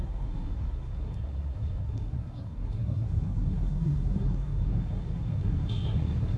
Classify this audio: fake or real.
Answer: fake